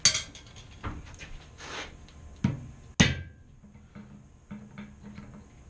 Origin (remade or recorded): recorded